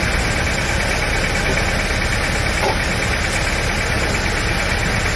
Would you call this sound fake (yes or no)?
no